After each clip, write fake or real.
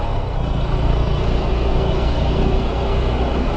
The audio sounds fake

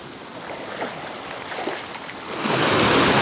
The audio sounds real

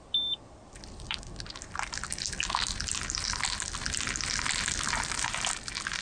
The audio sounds real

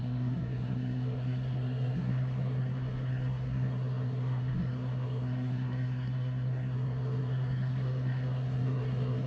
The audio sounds fake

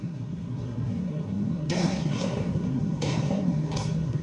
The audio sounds fake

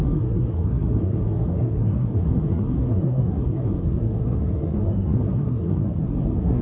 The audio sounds fake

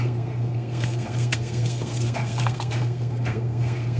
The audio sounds fake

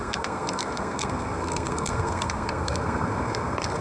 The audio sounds fake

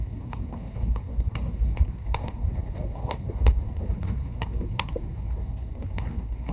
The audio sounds fake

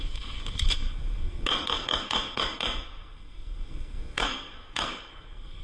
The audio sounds fake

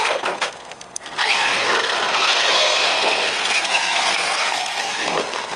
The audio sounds fake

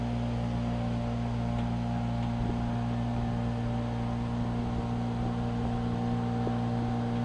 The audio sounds real